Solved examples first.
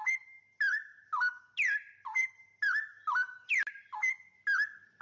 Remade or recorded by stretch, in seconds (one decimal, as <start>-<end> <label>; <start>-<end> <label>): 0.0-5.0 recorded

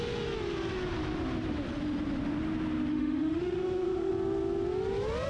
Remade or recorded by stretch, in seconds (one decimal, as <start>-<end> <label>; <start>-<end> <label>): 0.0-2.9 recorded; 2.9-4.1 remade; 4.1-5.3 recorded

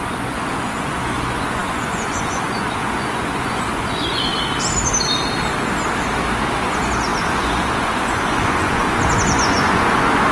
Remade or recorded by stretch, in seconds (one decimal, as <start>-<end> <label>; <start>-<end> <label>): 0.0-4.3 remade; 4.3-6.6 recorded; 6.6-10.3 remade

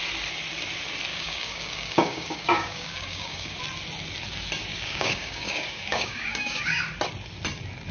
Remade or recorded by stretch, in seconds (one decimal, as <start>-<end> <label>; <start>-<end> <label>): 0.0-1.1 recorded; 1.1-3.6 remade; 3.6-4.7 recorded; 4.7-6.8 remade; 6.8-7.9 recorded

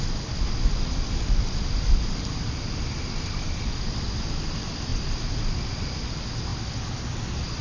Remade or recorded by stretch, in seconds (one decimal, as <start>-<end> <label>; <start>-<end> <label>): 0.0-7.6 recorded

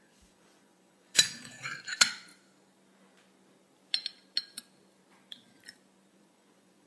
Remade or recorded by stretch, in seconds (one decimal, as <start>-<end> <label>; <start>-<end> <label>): 0.0-2.3 remade; 2.3-6.1 recorded; 6.1-6.9 remade

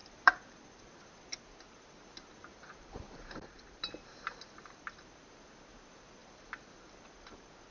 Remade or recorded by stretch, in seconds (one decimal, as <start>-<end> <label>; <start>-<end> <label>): 0.0-0.9 remade; 0.9-2.5 recorded; 2.5-4.3 remade; 4.3-7.7 recorded

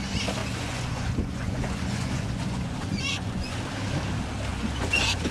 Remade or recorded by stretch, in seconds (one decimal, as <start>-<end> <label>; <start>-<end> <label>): 0.0-0.4 recorded; 0.4-3.6 remade; 3.6-4.5 recorded; 4.5-5.3 remade